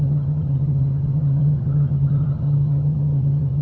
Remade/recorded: remade